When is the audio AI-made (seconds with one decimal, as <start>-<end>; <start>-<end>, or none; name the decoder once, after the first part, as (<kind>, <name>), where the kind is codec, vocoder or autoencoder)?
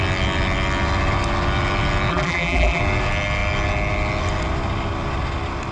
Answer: 2.1-2.8 (vocoder, BigVGAN v2)